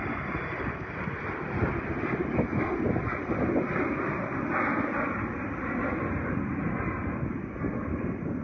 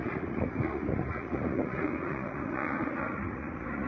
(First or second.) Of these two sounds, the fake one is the second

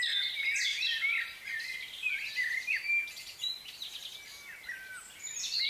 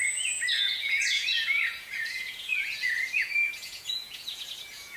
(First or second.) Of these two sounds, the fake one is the second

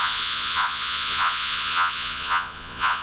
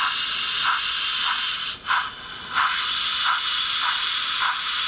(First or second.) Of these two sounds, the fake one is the first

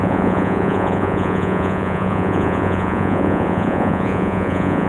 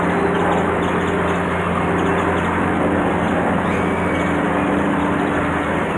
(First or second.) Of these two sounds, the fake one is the first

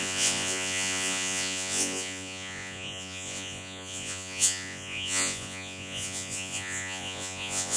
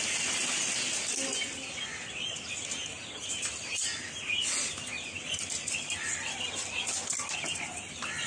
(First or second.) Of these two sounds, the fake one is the first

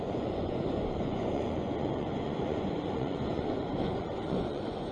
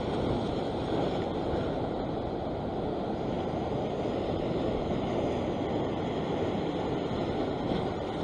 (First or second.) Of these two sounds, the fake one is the first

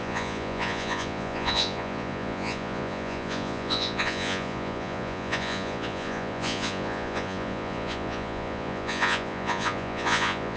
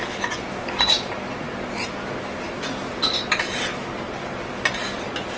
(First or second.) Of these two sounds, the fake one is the first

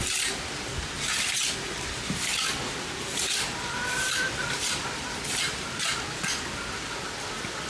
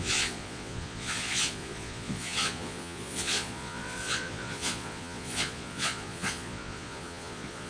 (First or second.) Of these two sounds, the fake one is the second